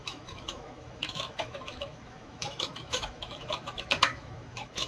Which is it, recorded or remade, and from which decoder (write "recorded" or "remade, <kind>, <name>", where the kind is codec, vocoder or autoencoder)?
remade, autoencoder, DAC-VAE